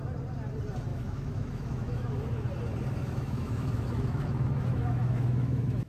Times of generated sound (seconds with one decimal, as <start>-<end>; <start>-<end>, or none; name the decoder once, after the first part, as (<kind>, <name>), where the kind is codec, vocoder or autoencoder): 0.9-2.2 (autoencoder, DAC-VAE); 3.0-5.9